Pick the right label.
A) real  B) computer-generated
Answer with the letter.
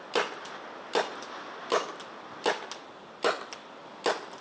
A